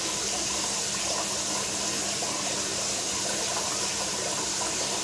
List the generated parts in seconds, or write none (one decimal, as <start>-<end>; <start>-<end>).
none